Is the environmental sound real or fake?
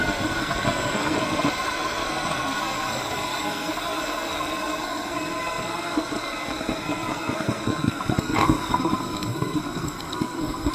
fake